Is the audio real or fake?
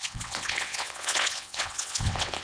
fake